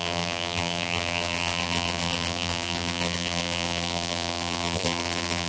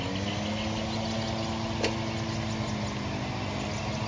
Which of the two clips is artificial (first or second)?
first